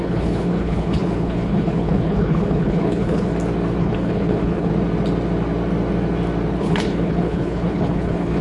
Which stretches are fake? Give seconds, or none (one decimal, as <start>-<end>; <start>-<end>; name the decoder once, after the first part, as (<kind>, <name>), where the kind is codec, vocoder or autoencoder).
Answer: 0.0-3.3 (codec, HILCodec); 3.8-4.7; 6.6-8.4